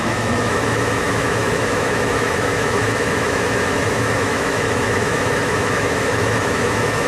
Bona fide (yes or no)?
no